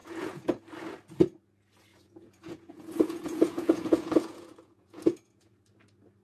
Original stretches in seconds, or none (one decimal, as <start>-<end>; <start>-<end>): 0.5-1.9; 5.6-6.2